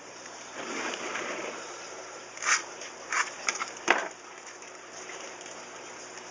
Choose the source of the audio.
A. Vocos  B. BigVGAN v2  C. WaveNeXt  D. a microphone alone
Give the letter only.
B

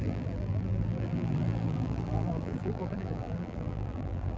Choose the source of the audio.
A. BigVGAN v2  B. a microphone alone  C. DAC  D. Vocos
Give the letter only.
A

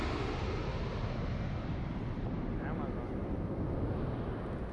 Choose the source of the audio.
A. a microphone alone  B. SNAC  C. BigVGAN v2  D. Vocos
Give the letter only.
A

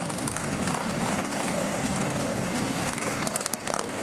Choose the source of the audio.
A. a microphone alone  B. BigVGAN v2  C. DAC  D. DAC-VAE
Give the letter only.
C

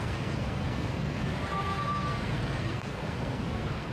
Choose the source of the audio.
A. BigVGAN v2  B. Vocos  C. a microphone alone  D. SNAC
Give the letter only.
D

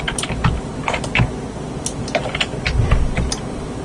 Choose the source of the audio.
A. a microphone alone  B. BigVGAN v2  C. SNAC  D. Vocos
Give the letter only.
A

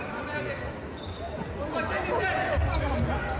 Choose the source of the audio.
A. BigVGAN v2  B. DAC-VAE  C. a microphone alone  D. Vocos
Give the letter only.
C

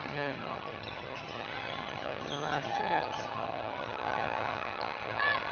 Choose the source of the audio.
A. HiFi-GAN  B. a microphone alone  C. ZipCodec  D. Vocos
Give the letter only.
A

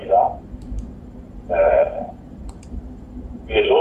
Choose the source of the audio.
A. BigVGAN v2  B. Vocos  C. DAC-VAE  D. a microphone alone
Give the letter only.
A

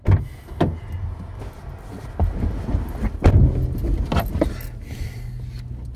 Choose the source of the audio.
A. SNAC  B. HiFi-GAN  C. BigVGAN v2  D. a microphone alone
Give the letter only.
D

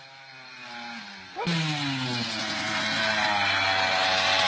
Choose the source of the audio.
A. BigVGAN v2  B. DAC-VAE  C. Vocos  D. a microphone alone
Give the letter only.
D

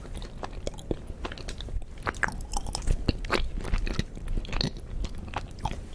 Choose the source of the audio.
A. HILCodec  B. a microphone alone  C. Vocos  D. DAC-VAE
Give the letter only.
B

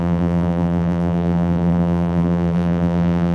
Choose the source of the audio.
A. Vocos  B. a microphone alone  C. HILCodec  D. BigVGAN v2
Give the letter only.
D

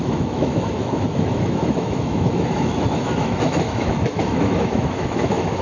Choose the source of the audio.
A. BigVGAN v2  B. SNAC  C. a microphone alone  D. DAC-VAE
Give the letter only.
D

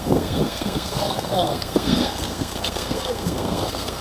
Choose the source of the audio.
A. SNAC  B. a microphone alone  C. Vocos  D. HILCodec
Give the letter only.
A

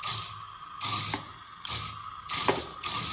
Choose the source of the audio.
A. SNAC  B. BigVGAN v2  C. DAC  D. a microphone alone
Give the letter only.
D